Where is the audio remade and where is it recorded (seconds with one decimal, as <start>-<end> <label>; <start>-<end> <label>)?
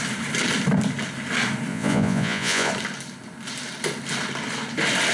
0.0-1.7 recorded; 1.7-2.7 remade; 2.7-5.1 recorded